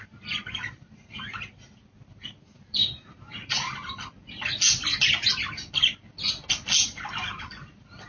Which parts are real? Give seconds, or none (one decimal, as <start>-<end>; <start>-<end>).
0.0-0.7; 2.8-7.4